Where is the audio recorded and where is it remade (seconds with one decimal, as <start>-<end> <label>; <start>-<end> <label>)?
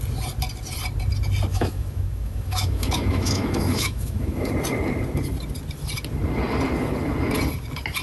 0.0-1.5 recorded; 1.5-4.5 remade; 4.5-8.0 recorded